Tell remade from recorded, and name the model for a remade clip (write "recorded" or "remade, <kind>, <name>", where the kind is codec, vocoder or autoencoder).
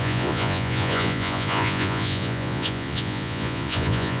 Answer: remade, vocoder, Vocos